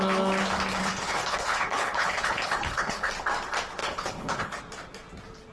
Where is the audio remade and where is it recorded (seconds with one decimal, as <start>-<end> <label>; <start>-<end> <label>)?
0.0-0.8 recorded; 0.8-3.1 remade; 3.1-3.8 recorded; 3.8-4.6 remade; 4.6-5.5 recorded